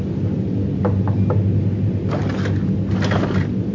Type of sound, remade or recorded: recorded